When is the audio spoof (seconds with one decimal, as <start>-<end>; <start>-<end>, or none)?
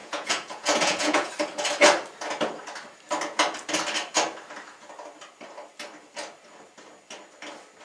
0.0-1.3